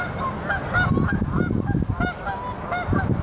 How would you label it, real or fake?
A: real